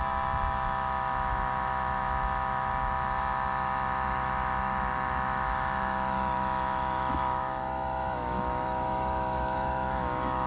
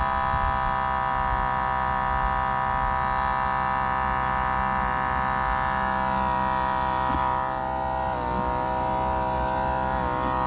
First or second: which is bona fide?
second